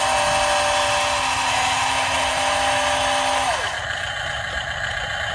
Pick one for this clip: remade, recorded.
recorded